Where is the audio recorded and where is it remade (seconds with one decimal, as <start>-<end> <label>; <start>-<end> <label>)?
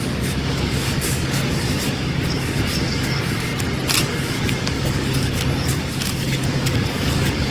0.0-3.5 remade; 3.5-4.1 recorded; 4.1-7.5 remade